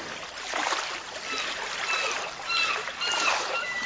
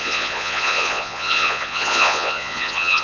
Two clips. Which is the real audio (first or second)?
first